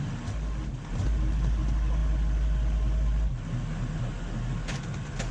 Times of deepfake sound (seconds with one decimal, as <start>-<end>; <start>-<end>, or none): none